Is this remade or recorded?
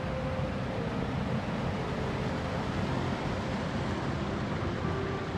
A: recorded